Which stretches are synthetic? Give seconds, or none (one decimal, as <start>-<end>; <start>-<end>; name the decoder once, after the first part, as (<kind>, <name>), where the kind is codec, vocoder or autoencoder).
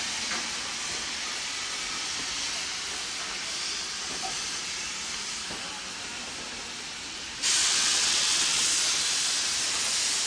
7.6-8.7 (vocoder, WaveNeXt)